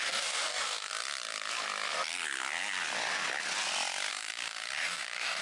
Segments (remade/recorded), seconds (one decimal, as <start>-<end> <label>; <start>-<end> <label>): 0.0-0.9 remade; 0.9-4.1 recorded; 4.1-5.4 remade